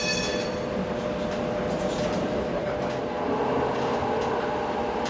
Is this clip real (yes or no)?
yes